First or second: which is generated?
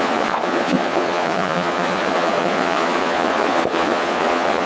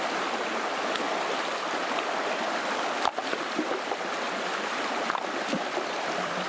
first